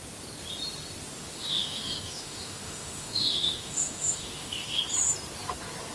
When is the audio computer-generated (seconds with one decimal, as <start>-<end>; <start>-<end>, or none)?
1.3-4.8